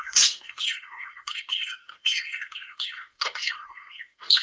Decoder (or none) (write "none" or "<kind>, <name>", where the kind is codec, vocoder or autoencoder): codec, SNAC